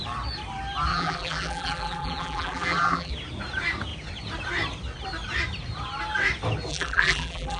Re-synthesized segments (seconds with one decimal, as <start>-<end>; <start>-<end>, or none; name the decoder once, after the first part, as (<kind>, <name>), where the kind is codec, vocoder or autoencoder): 0.9-3.1 (vocoder, BigVGAN v2); 6.7-7.6